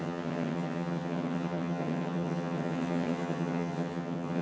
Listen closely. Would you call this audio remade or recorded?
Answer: remade